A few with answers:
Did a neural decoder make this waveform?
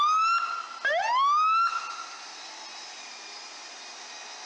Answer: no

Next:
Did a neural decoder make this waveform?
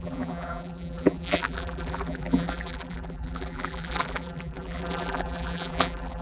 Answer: yes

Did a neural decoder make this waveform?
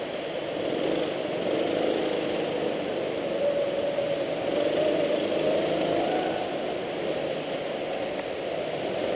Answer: no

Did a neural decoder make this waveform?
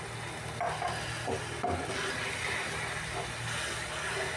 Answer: no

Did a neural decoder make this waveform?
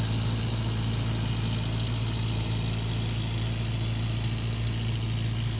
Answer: no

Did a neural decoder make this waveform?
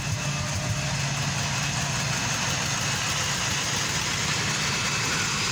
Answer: no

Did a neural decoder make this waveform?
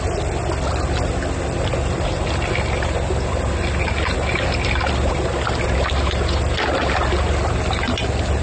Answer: no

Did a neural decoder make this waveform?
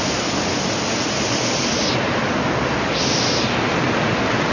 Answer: no